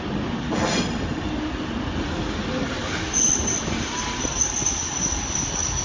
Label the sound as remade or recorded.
recorded